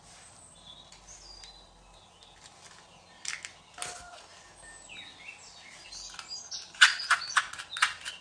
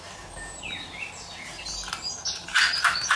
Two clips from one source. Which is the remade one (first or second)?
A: second